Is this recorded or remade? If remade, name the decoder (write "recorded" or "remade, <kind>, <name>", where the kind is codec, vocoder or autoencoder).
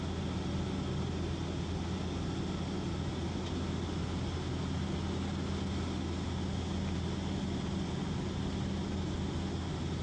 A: recorded